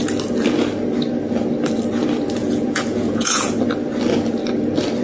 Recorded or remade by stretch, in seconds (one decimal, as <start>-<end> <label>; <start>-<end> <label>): 0.0-2.4 recorded; 2.4-3.5 remade; 3.5-5.0 recorded